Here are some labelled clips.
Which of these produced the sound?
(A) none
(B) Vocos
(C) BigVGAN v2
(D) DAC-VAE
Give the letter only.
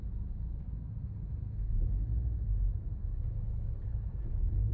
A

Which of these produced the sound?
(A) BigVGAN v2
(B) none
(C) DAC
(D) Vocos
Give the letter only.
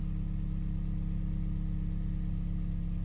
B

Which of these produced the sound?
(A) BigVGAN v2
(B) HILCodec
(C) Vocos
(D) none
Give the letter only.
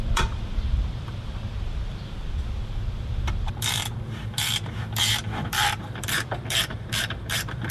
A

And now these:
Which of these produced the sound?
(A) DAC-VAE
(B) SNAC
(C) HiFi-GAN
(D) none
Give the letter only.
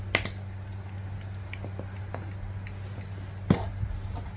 D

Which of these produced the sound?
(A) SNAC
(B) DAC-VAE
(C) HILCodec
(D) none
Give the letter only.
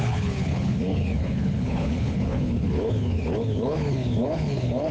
C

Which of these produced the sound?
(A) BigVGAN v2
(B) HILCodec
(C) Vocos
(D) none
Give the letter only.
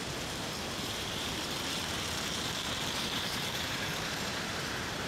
A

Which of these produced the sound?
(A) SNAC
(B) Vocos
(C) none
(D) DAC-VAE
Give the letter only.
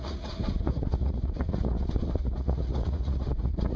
B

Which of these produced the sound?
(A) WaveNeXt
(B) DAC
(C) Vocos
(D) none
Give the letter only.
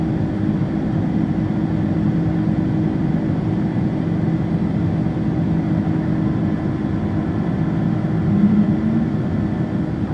D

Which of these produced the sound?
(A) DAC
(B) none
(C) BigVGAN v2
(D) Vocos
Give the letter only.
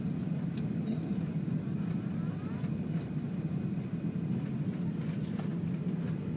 B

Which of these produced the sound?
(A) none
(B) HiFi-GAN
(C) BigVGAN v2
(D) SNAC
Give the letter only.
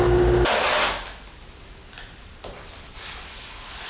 A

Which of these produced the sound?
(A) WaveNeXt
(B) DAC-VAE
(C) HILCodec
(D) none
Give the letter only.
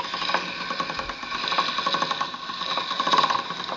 D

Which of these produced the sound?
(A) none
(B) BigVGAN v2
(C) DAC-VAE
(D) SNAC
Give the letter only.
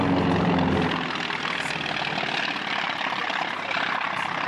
A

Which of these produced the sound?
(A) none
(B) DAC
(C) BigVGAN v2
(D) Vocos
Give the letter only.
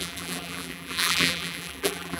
C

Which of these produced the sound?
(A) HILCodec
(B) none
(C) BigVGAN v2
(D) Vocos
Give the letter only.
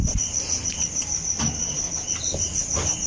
B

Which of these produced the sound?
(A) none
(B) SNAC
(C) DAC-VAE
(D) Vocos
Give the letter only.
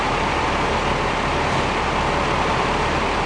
A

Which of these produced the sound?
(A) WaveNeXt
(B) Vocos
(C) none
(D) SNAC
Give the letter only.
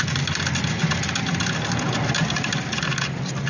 C